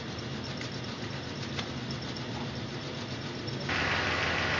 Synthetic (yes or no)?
no